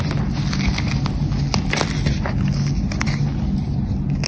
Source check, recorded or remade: recorded